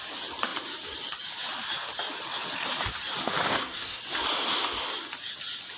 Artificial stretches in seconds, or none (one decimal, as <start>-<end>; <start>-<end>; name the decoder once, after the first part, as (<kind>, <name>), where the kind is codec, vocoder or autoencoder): 3.5-4.0 (codec, DAC)